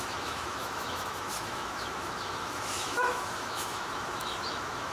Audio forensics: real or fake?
fake